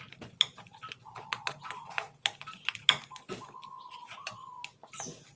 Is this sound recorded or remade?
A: recorded